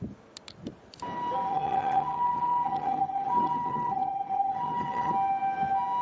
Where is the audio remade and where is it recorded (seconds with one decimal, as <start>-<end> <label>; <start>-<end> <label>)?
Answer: 0.0-1.5 recorded; 1.5-5.1 remade; 5.1-6.0 recorded